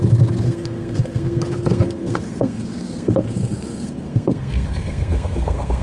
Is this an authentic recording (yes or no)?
no